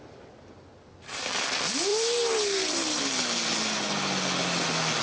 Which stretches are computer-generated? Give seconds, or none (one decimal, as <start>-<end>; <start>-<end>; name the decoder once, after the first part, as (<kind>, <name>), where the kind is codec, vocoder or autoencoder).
none